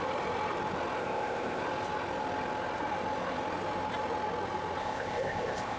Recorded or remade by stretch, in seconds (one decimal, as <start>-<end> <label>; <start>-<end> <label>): 0.0-1.0 recorded; 1.0-1.6 remade; 1.6-4.8 recorded; 4.8-5.8 remade